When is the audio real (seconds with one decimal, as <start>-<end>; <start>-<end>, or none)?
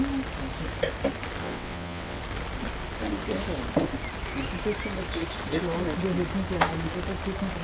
0.0-1.4; 2.2-7.6